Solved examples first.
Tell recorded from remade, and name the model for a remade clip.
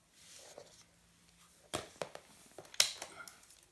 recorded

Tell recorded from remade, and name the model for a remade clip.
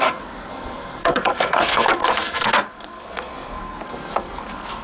remade, codec, SNAC